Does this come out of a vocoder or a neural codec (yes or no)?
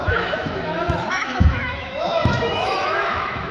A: yes